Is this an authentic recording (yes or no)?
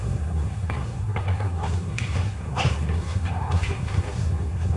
no